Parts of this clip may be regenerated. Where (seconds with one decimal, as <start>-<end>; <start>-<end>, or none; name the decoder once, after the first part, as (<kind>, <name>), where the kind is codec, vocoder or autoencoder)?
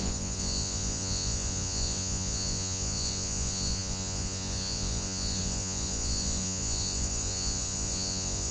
0.0-8.5 (vocoder, Vocos)